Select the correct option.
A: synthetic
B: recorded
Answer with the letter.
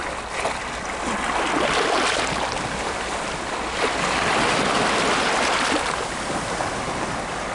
B